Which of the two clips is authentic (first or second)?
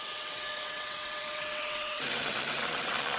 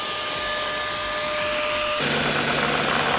second